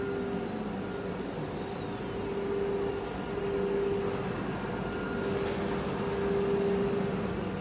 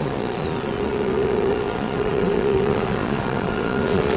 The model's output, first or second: second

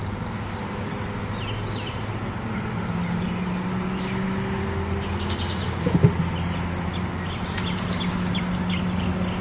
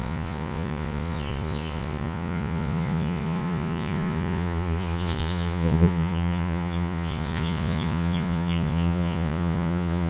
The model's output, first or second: second